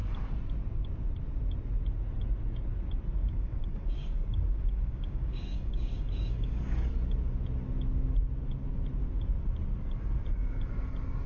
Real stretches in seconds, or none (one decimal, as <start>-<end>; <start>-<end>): 0.0-3.2; 6.9-11.3